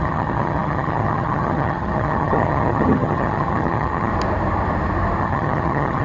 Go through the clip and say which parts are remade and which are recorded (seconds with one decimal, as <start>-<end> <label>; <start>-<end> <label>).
0.0-4.1 remade; 4.1-5.2 recorded; 5.2-6.0 remade